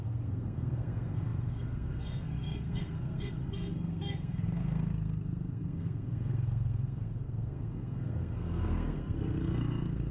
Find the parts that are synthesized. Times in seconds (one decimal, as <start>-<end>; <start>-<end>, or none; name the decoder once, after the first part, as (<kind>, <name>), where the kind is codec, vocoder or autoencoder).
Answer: 0.0-10.1 (codec, SNAC)